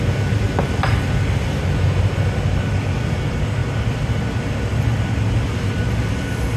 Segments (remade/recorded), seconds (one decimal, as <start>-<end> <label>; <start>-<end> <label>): 0.0-6.6 recorded